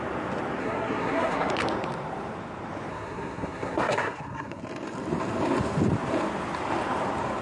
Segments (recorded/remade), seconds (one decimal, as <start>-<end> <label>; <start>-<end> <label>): 0.0-0.6 recorded; 0.6-1.5 remade; 1.5-2.9 recorded; 2.9-4.6 remade; 4.6-7.4 recorded